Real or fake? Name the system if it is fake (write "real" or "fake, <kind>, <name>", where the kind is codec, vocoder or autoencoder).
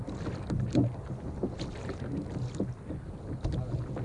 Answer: real